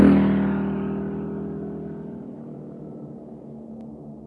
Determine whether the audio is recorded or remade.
recorded